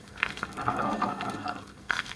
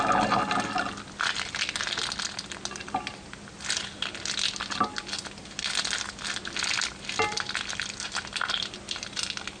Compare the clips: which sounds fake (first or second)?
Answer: first